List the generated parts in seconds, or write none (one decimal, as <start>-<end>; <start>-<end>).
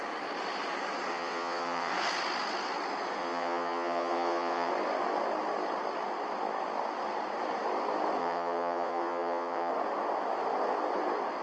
1.1-1.9; 3.2-4.7; 8.2-9.7